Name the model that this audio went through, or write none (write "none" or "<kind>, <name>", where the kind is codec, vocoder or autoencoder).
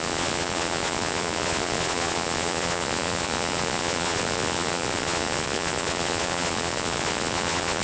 vocoder, Vocos